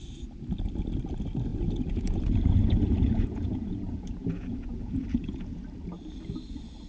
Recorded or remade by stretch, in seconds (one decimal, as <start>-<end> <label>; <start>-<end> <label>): 0.0-1.5 recorded; 1.5-5.6 remade; 5.6-6.9 recorded